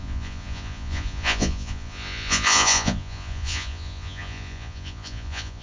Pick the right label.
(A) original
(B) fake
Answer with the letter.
B